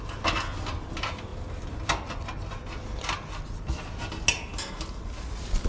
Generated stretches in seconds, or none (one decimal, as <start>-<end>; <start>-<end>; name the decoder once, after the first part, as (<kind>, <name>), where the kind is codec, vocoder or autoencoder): none